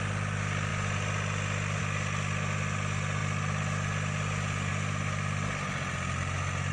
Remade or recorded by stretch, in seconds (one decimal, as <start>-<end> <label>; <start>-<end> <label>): 0.0-6.7 recorded